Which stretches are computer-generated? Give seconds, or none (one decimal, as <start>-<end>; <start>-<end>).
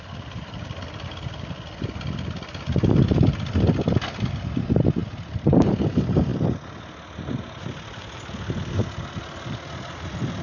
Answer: none